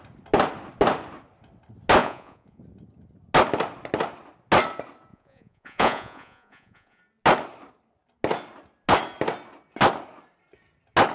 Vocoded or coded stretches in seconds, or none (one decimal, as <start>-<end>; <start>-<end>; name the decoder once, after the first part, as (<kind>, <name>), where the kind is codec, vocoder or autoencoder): 2.0-2.6 (vocoder, Vocos); 5.1-7.0